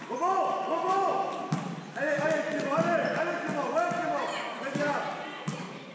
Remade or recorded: recorded